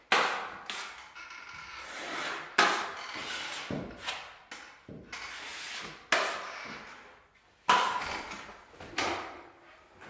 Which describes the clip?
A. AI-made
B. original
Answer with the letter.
B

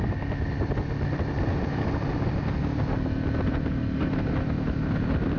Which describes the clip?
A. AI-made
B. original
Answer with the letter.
B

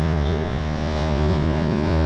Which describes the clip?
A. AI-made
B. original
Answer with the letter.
A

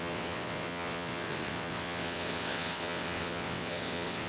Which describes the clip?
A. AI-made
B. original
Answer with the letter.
A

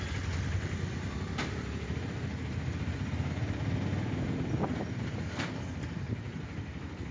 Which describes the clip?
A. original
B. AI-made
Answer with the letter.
A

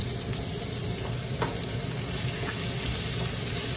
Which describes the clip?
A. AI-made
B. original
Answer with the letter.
B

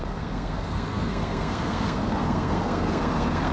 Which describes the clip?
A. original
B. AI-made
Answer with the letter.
B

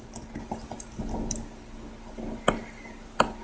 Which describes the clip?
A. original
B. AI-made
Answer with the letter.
A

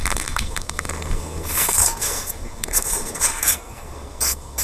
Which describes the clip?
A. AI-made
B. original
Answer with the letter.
A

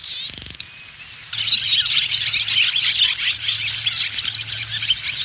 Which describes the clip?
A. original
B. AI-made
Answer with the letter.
A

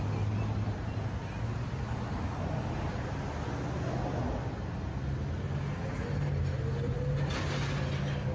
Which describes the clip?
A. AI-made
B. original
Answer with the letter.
B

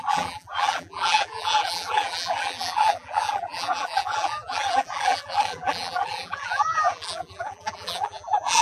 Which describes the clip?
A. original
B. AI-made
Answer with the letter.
B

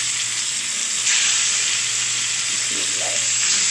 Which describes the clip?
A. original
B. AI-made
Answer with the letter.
A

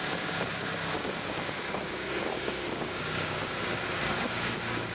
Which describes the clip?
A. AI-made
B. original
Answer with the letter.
A